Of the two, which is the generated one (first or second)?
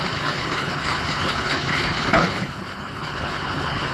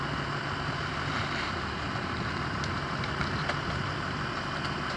first